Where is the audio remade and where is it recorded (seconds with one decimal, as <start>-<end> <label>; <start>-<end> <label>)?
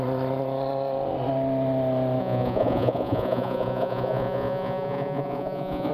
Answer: 0.0-2.2 recorded; 2.2-5.9 remade